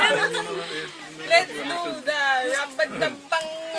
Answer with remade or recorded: recorded